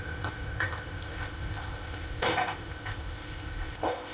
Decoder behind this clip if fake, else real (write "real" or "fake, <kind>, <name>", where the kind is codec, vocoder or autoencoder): fake, codec, ZipCodec